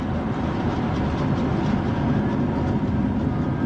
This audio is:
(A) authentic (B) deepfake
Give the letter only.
A